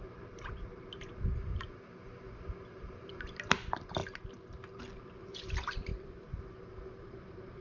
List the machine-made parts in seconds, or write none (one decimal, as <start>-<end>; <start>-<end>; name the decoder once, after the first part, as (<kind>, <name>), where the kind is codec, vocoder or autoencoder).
0.0-1.5 (vocoder, BigVGAN v2); 3.1-4.0; 5.0-7.6